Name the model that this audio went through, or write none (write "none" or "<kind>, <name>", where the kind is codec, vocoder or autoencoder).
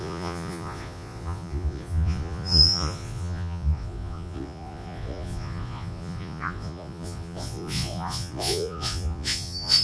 vocoder, Vocos